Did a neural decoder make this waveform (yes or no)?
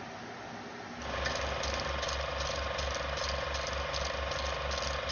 no